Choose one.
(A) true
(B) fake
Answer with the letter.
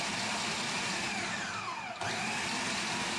B